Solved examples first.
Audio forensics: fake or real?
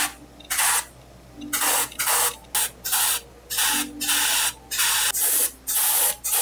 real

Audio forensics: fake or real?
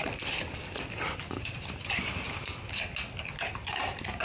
real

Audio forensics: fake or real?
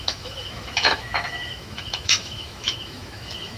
fake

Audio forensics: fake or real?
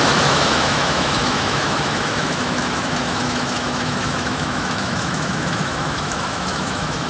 fake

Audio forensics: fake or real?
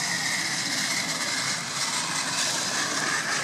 real